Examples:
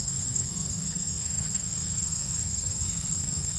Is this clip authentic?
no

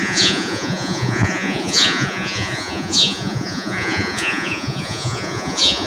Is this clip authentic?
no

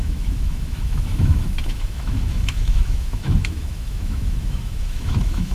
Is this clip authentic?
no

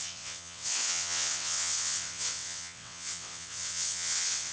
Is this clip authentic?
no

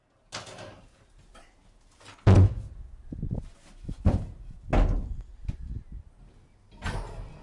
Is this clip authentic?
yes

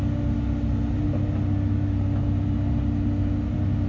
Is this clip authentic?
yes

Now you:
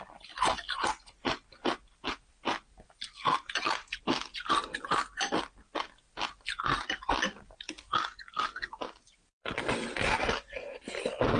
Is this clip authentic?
yes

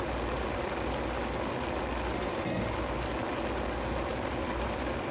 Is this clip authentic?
yes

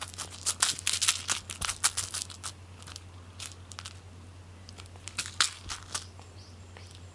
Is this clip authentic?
yes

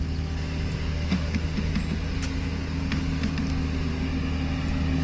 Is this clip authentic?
yes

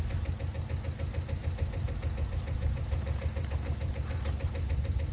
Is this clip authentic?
yes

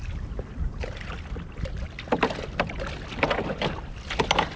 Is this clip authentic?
yes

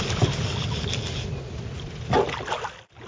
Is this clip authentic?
yes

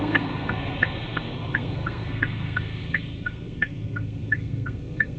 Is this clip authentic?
no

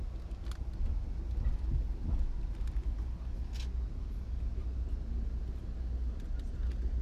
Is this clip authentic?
yes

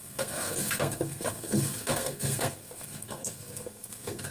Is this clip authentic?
no